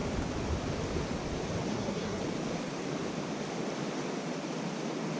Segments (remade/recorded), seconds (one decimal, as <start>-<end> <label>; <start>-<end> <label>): 0.0-1.7 recorded; 1.7-2.2 remade; 2.2-5.2 recorded